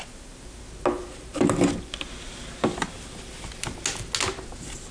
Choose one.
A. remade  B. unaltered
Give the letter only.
B